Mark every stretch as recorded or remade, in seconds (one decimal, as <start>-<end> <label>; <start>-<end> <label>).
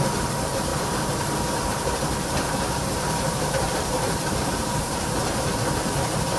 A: 0.0-6.4 remade